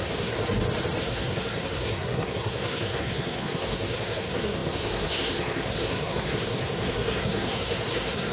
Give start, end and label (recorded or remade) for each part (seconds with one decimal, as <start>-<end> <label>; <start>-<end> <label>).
0.0-0.4 remade; 0.4-1.0 recorded; 1.0-8.3 remade